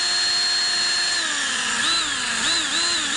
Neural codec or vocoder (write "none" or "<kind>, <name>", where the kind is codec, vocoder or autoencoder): none